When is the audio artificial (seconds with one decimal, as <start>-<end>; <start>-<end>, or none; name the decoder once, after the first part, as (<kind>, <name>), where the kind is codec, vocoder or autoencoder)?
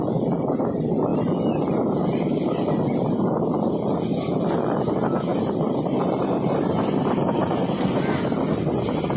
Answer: 5.3-7.5 (vocoder, BigVGAN v2)